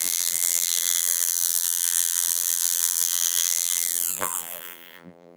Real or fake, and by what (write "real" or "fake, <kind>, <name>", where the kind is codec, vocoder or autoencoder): fake, vocoder, BigVGAN v2